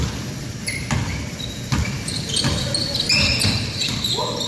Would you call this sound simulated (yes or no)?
no